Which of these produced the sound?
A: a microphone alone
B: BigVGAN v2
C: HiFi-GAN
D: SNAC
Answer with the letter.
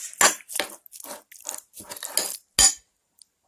A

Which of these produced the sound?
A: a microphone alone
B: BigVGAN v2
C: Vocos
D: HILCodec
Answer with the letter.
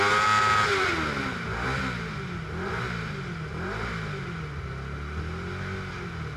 A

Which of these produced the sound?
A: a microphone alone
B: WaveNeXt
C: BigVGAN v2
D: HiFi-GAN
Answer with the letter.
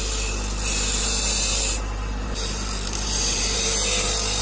C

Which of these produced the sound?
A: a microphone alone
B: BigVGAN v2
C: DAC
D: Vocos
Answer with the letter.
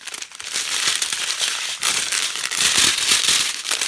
A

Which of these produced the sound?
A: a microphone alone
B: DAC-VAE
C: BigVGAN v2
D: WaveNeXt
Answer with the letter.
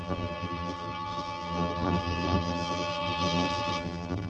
C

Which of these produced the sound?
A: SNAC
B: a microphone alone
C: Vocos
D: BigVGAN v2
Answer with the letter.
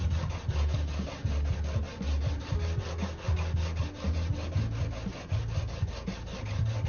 B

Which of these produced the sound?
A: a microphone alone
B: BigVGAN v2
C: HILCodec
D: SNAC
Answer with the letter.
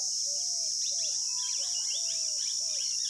A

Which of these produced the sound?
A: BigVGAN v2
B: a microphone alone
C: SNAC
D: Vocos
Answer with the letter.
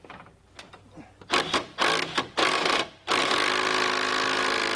B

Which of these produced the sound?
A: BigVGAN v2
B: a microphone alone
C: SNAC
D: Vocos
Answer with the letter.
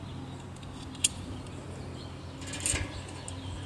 B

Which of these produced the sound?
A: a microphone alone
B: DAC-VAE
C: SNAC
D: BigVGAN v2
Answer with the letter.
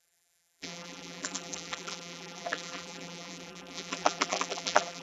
D